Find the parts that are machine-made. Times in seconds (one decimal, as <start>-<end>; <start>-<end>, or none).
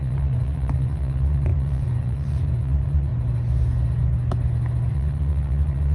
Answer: 0.0-3.1; 4.9-5.9